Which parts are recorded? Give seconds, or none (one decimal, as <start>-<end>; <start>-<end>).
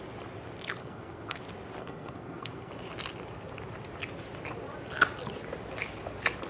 0.0-0.8; 1.4-1.8; 2.7-6.5